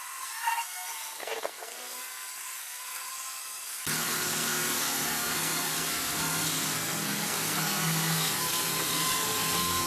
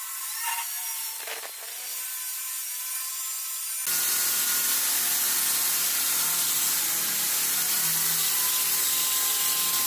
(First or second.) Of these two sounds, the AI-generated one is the first